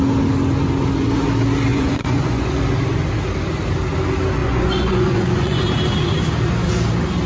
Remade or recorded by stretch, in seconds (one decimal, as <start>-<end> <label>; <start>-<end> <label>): 0.0-1.7 recorded; 1.7-2.6 remade; 2.6-4.4 recorded; 4.4-5.6 remade; 5.6-7.3 recorded